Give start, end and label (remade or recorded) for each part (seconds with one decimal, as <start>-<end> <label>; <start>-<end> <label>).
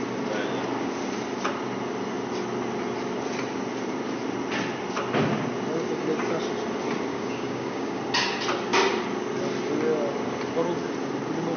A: 0.0-7.1 recorded; 7.1-8.0 remade; 8.0-11.6 recorded